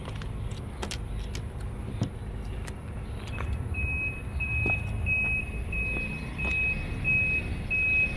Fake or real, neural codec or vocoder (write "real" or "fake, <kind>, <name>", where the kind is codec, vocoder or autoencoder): real